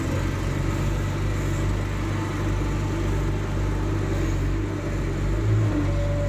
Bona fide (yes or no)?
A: yes